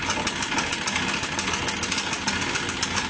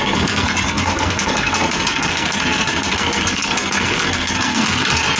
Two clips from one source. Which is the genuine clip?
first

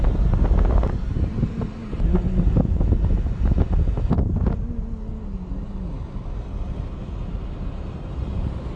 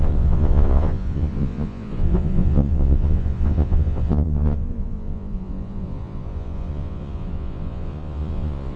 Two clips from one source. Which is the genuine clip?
first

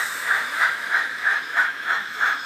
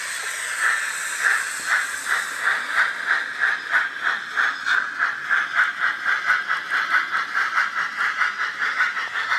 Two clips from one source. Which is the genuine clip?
second